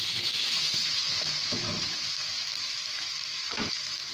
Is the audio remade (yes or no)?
yes